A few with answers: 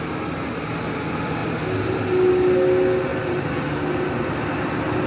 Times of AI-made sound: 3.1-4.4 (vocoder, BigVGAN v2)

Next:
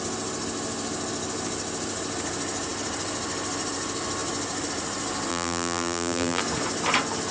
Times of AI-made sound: 5.3-6.4 (vocoder, BigVGAN v2)

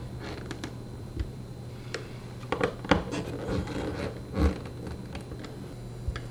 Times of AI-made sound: 0.0-2.7 (vocoder, BigVGAN v2)

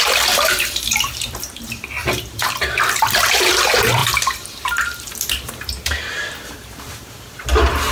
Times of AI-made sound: 0.0-7.9 (vocoder, BigVGAN v2)

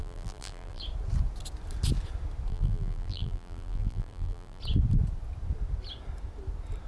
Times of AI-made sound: 0.0-0.8 (vocoder, BigVGAN v2); 2.5-4.6

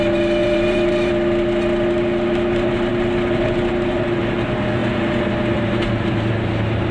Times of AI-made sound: 0.4-1.1 (vocoder, BigVGAN v2); 4.8-6.3

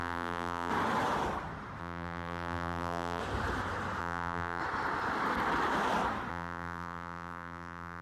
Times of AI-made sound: 0.0-0.7 (vocoder, BigVGAN v2); 1.8-3.2; 4.0-4.6; 6.3-8.0